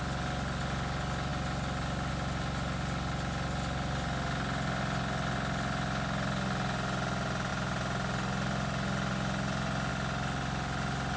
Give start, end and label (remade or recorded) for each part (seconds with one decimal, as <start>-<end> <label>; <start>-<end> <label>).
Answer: 0.0-11.2 recorded

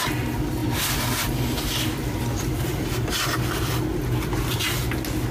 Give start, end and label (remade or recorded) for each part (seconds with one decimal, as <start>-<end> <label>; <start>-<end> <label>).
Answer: 0.0-5.3 recorded